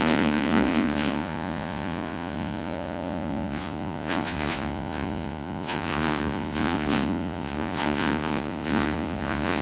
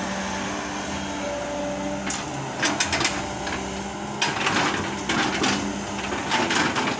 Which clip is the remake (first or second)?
first